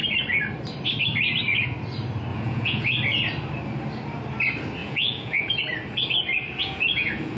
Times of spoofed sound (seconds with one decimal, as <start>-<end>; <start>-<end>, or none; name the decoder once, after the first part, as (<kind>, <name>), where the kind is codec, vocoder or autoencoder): 2.3-2.9 (vocoder, Vocos); 4.8-5.6; 6.6-7.4